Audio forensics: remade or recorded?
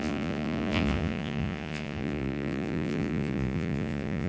remade